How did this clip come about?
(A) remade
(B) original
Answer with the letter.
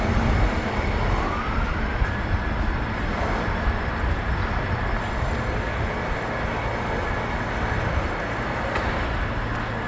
B